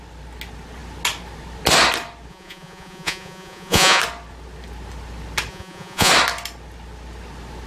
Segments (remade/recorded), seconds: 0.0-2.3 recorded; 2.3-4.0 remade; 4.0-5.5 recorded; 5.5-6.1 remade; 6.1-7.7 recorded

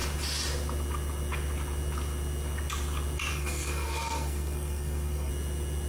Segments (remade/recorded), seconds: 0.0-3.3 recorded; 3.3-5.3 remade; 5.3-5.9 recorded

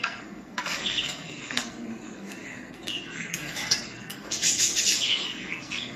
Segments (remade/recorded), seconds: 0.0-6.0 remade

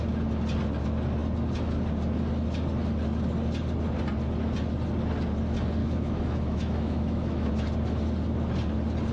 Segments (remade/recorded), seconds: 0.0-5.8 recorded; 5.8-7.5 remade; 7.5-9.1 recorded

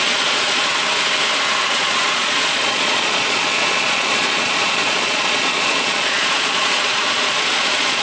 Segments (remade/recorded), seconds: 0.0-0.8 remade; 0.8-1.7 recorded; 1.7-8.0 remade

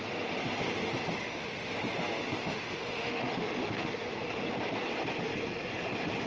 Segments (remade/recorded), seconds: 0.0-1.2 recorded; 1.2-1.7 remade; 1.7-2.5 recorded; 2.5-3.9 remade; 3.9-6.3 recorded

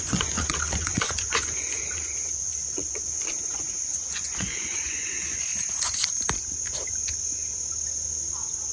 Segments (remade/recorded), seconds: 0.0-5.5 remade; 5.5-8.7 recorded